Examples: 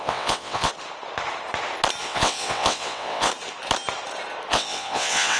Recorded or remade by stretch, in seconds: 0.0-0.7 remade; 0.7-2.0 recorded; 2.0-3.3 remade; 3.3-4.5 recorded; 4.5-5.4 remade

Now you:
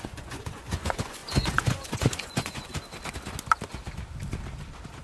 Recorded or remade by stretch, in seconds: 0.0-2.7 remade; 2.7-5.0 recorded

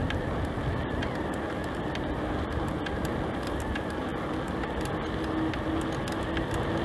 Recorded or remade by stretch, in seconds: 0.0-6.8 recorded